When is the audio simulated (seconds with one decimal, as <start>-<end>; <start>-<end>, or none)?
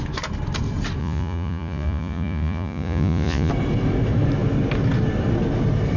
1.0-3.5